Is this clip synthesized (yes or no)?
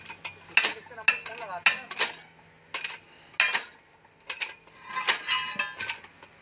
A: no